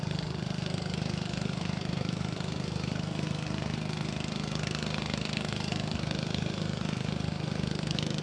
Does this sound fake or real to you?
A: fake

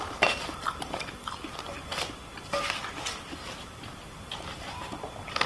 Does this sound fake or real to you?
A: fake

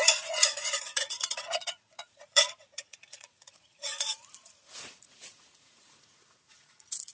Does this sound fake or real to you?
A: fake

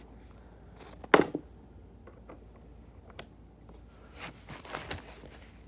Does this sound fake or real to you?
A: real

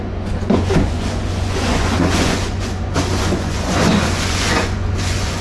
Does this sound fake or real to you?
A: fake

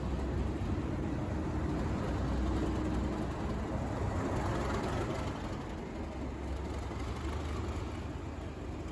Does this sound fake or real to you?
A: real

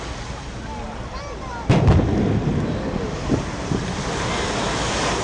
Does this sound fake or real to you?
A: real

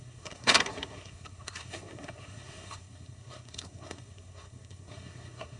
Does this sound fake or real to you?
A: fake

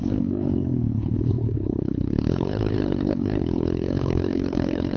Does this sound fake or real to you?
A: fake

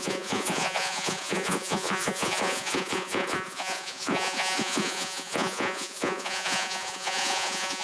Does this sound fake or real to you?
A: fake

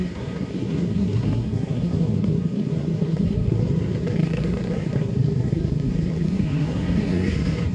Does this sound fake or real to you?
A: fake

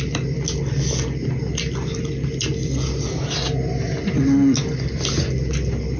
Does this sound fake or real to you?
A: real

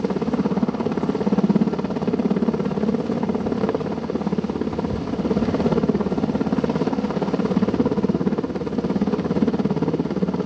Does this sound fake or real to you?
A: real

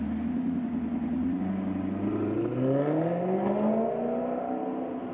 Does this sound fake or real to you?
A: real